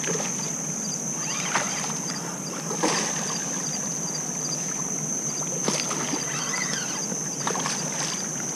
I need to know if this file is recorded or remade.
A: recorded